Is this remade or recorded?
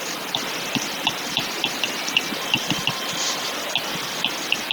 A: recorded